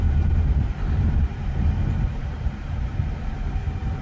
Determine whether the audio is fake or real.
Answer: fake